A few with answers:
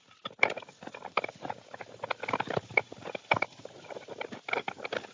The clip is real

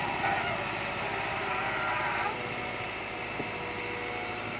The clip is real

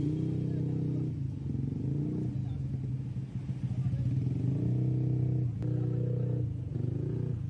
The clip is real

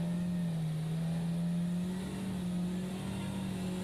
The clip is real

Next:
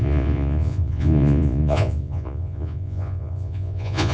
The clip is fake